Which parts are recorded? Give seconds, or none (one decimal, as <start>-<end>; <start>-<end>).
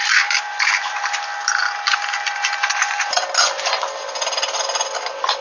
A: 1.0-5.4